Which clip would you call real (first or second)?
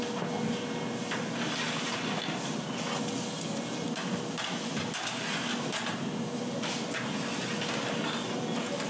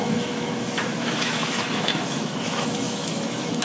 first